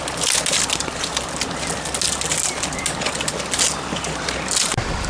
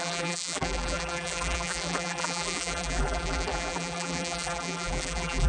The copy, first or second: second